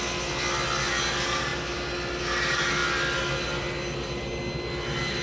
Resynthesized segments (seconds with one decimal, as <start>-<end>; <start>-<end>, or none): none